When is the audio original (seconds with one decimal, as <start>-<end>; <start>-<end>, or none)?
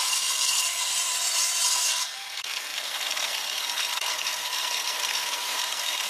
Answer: 0.9-1.7